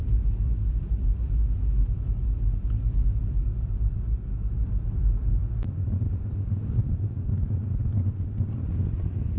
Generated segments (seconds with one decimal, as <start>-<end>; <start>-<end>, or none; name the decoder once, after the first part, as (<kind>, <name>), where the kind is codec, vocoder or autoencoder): none